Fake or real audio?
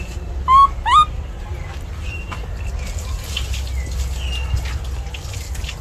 real